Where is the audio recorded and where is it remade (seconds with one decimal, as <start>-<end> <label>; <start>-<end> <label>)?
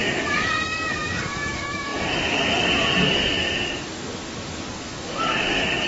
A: 0.0-3.4 remade; 3.4-4.7 recorded; 4.7-5.9 remade